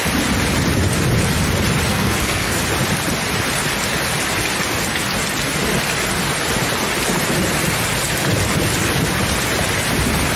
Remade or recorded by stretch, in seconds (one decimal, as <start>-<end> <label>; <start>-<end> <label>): 0.0-1.9 recorded; 1.9-2.6 remade; 2.6-10.4 recorded